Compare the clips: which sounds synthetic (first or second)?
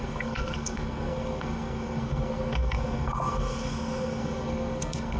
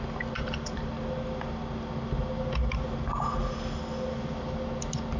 first